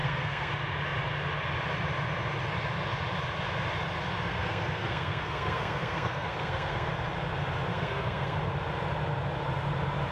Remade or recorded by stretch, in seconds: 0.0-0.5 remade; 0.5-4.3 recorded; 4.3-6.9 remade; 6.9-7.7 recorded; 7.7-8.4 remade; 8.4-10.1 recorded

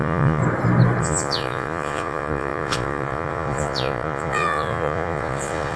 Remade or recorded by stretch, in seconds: 0.0-0.4 remade; 0.4-1.0 recorded; 1.0-5.8 remade

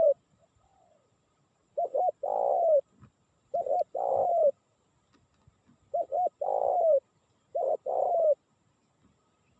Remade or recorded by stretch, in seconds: 0.0-0.7 recorded; 0.7-1.9 remade; 1.9-4.2 recorded; 4.2-4.9 remade; 4.9-6.6 recorded; 6.6-8.1 remade; 8.1-9.6 recorded

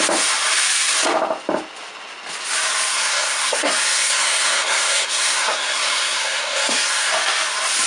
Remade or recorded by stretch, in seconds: 0.0-2.9 recorded; 2.9-7.1 remade; 7.1-7.9 recorded